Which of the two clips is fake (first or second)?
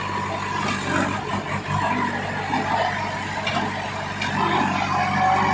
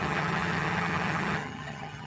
second